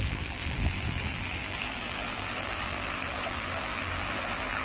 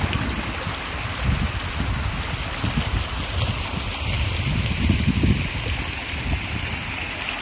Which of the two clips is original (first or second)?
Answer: second